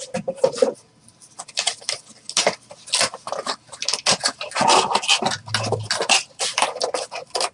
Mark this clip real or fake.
real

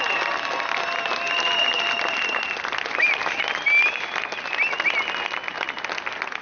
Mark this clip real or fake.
real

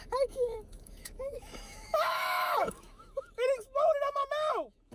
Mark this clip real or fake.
fake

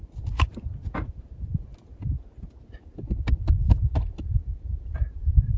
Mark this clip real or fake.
real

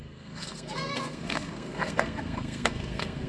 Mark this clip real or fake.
fake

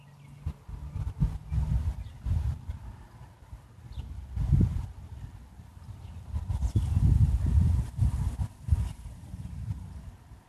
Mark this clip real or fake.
real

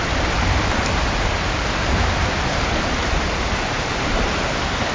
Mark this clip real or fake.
fake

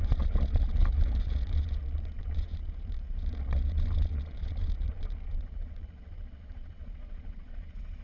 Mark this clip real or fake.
fake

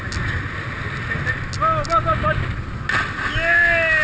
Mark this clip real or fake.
real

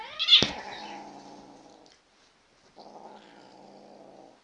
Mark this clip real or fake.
real